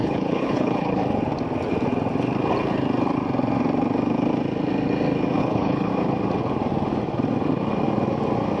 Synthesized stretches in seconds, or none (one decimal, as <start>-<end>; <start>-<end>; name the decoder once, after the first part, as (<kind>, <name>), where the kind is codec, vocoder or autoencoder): 0.0-1.0 (codec, HILCodec); 5.4-5.9